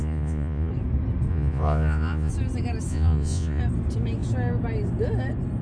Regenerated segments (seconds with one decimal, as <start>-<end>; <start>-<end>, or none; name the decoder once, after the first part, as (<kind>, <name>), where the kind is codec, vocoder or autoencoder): 0.0-0.7 (vocoder, Vocos); 1.3-2.3; 2.9-3.6